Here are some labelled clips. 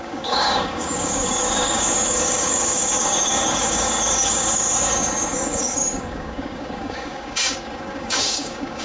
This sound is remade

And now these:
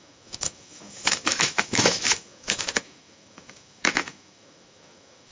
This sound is remade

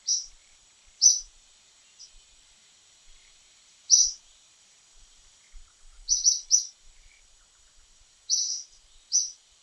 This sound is remade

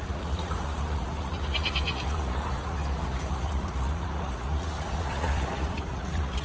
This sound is remade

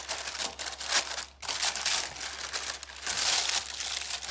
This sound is recorded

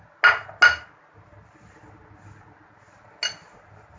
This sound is recorded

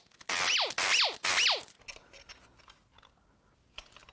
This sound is recorded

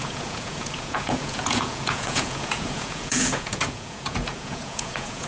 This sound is remade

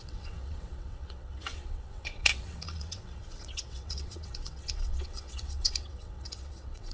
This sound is remade